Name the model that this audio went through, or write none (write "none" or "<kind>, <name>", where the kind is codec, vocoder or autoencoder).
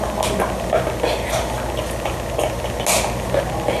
none